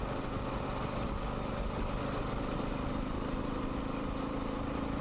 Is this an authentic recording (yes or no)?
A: yes